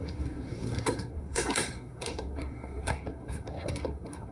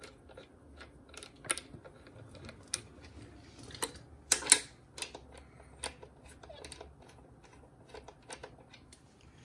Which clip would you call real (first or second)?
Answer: second